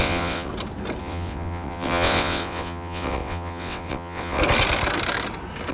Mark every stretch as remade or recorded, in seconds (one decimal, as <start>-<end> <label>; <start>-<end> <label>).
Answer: 0.0-0.5 remade; 0.5-1.0 recorded; 1.0-4.4 remade; 4.4-5.7 recorded